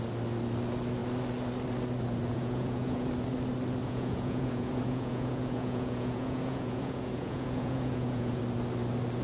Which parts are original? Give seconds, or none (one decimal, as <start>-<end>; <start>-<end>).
0.0-2.3; 3.1-3.8; 8.4-9.2